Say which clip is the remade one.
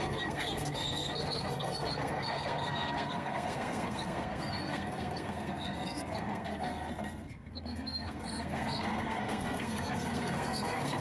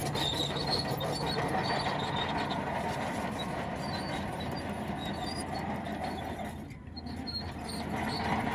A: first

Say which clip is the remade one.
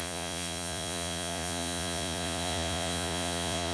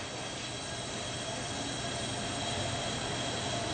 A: first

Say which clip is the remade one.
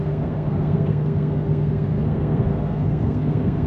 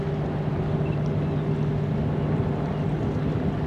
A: first